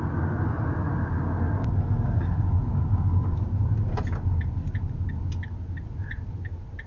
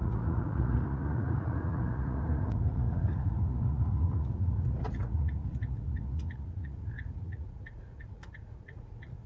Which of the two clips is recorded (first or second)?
first